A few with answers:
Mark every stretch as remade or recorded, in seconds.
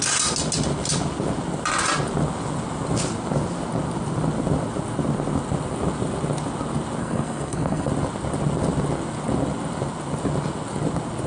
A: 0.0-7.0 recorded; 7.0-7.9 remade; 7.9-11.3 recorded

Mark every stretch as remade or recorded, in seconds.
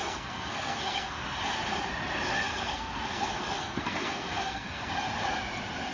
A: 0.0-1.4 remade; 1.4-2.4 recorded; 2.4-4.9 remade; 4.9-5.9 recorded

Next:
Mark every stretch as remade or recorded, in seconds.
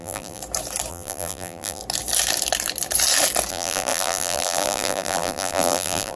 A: 0.0-0.4 remade; 0.4-0.9 recorded; 0.9-1.8 remade; 1.8-3.5 recorded; 3.5-6.2 remade